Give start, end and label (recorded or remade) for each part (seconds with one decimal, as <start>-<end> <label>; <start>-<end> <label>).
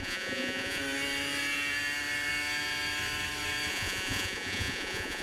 0.0-0.8 remade; 0.8-3.7 recorded; 3.7-5.2 remade